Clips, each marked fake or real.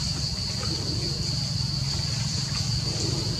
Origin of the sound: real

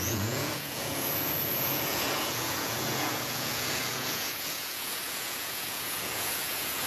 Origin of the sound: fake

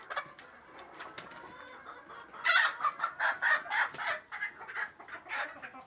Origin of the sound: real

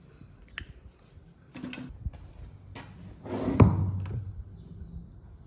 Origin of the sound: real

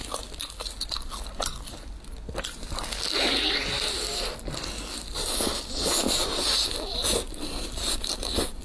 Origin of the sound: real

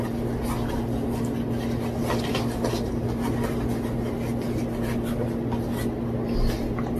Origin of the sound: real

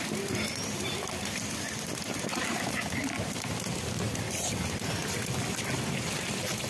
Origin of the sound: real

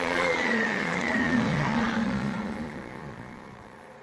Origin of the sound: fake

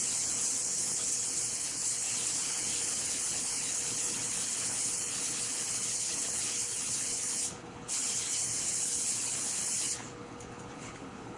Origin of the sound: fake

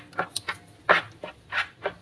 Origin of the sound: real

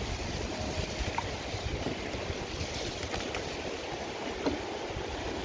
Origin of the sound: real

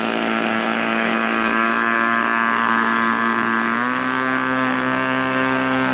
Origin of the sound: fake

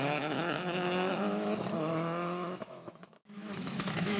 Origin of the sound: fake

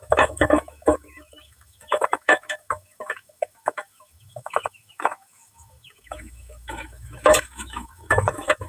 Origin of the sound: fake